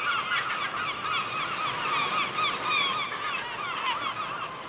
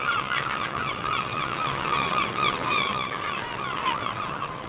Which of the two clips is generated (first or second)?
second